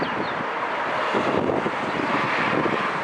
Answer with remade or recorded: recorded